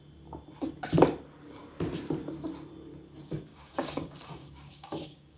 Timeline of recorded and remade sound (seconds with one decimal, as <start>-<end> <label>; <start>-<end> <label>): 0.0-3.5 recorded; 3.5-5.4 remade